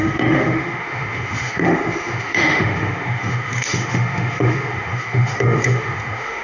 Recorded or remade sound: remade